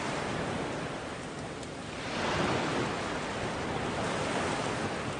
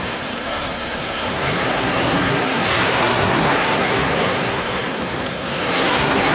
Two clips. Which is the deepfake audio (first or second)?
second